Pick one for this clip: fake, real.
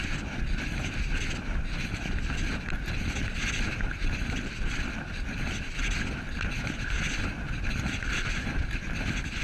real